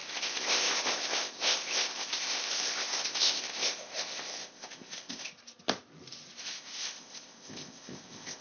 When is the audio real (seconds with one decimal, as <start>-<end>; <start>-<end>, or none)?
5.3-6.4